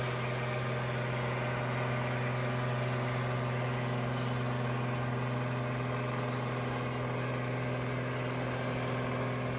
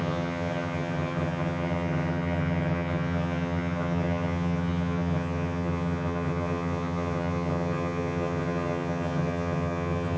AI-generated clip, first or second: second